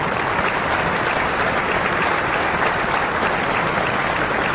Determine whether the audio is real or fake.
real